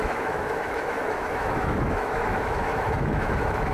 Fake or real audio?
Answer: fake